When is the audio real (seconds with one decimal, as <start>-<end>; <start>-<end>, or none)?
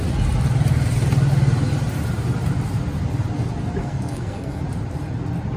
0.0-3.8; 4.6-5.6